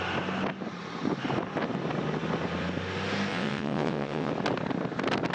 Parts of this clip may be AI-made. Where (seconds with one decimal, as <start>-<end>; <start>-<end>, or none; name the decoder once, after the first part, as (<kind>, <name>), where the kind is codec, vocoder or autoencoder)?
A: 3.3-4.3 (vocoder, WaveNeXt)